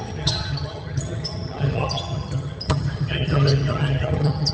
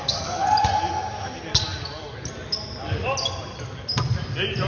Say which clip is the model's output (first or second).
first